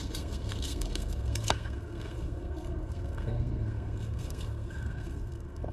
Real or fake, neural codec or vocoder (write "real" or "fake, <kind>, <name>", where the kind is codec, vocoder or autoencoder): fake, codec, SNAC